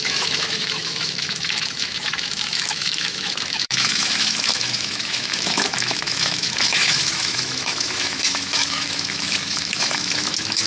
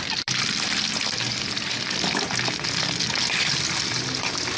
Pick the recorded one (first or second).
second